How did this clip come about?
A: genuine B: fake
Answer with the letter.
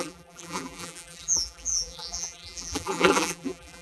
B